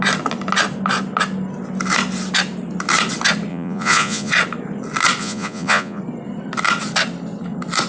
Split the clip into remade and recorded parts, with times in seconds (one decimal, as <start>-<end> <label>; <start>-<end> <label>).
0.0-3.5 recorded; 3.5-4.3 remade; 4.3-5.2 recorded; 5.2-6.0 remade; 6.0-7.9 recorded